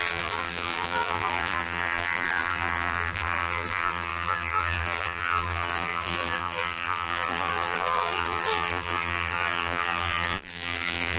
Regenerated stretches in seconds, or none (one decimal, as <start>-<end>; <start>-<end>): 0.0-11.2